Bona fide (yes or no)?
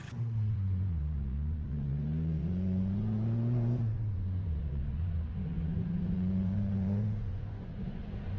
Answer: no